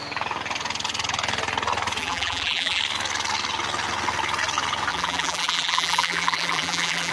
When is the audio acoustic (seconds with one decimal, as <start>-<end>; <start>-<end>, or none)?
0.0-2.0; 2.8-4.9